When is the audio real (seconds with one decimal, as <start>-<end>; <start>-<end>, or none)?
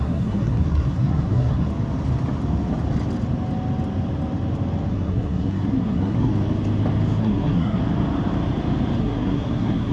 1.7-4.9; 6.3-7.2; 7.8-9.0